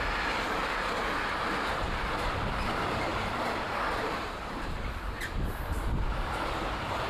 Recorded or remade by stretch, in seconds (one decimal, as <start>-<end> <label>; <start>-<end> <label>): 0.0-0.6 remade; 0.6-1.9 recorded; 1.9-7.1 remade